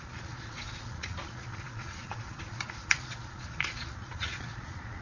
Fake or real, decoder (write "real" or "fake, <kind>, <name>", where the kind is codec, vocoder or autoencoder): fake, vocoder, Vocos